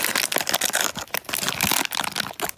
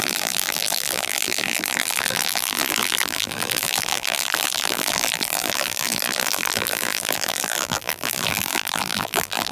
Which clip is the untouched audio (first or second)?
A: first